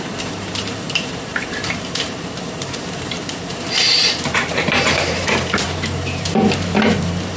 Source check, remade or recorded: remade